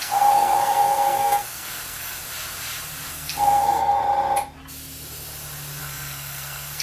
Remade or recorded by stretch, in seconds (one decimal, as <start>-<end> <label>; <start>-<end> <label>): 0.0-2.2 remade; 2.2-3.1 recorded; 3.1-4.0 remade; 4.0-5.8 recorded; 5.8-6.8 remade